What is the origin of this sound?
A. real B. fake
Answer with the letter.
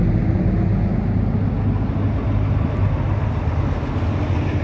A